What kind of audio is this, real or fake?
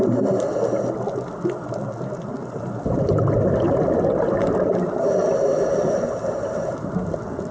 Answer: real